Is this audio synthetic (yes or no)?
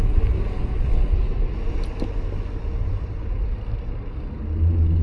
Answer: no